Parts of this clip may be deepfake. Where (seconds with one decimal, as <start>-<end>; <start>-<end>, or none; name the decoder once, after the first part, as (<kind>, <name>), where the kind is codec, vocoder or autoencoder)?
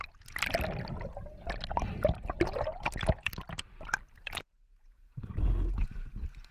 4.7-5.3 (vocoder, Vocos)